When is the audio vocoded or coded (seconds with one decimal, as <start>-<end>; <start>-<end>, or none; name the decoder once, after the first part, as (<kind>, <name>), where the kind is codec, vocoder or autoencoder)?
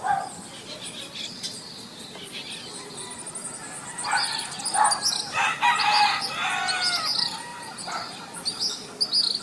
none